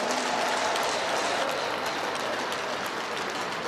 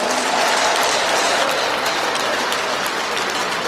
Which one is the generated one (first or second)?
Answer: second